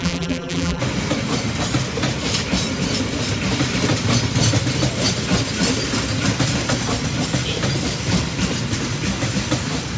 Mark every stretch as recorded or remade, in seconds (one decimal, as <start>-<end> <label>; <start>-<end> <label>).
0.0-0.8 remade; 0.8-10.0 recorded